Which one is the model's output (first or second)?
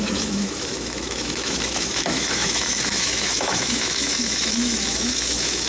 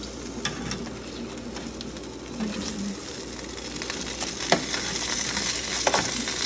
first